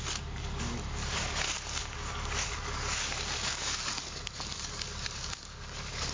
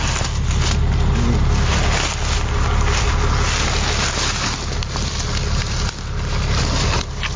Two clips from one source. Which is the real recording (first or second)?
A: second